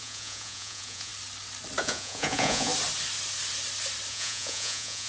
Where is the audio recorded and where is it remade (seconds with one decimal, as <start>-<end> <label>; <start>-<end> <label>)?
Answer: 0.0-1.1 remade; 1.1-1.8 recorded; 1.8-2.7 remade; 2.7-4.1 recorded; 4.1-5.1 remade